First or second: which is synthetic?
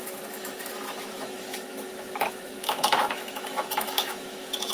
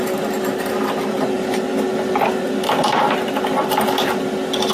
first